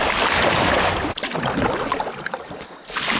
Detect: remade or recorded recorded